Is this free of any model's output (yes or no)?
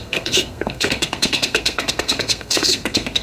no